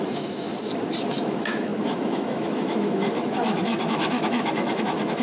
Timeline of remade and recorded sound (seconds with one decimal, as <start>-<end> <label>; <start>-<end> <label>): 0.0-0.5 remade; 0.5-1.1 recorded; 1.1-5.2 remade